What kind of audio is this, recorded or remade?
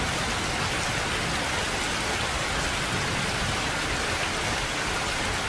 recorded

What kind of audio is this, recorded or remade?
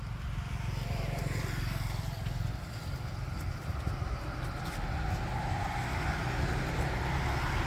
recorded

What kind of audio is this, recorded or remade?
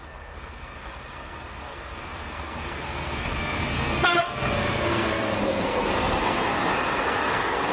remade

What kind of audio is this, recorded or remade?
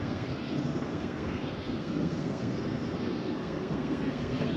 remade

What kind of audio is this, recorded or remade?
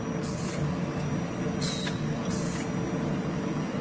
recorded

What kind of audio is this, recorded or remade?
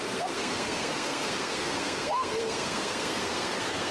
remade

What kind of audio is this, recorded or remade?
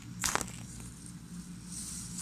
recorded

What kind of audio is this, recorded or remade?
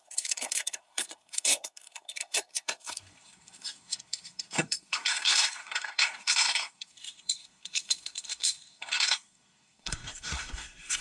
remade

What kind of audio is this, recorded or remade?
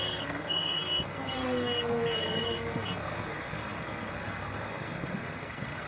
remade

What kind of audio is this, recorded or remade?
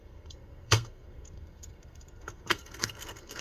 remade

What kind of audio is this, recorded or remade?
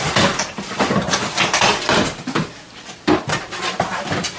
recorded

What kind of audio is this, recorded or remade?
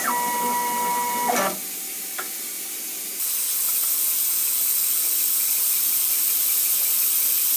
recorded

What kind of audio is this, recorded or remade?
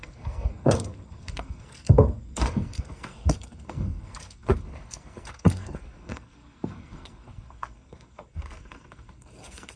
remade